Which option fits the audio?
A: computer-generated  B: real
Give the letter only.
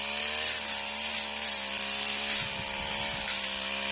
B